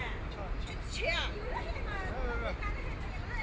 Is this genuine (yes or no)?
yes